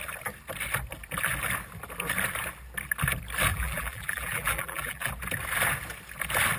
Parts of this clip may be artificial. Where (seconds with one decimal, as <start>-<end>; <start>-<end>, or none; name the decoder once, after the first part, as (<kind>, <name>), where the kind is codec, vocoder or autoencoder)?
3.5-5.1 (vocoder, BigVGAN v2)